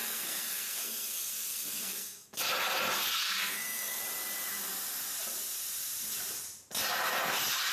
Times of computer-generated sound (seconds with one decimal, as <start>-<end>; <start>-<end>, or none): 0.0-2.4; 3.2-4.0